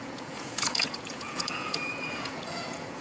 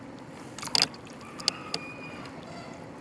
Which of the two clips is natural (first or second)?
second